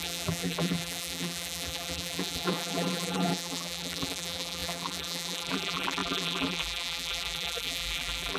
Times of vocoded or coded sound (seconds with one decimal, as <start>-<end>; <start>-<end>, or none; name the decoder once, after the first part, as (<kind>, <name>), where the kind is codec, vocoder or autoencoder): 0.0-8.4 (vocoder, BigVGAN v2)